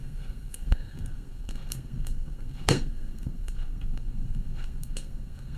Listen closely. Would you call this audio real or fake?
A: fake